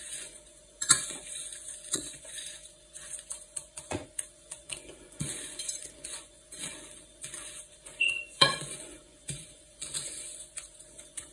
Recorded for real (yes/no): no